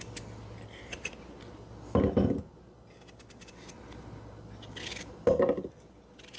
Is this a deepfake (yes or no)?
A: no